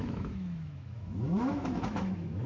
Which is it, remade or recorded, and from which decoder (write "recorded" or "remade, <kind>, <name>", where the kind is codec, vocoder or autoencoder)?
remade, autoencoder, DAC-VAE